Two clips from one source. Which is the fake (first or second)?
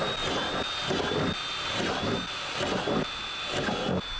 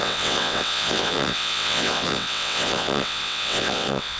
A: second